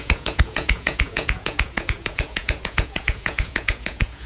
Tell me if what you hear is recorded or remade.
remade